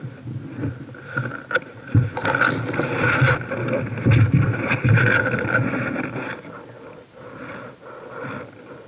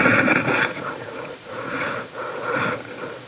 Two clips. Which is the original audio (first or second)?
first